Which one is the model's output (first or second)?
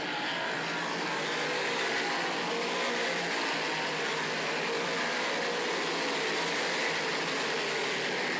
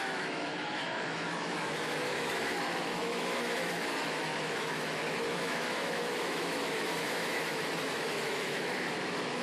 second